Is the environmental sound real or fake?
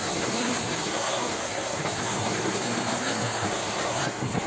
fake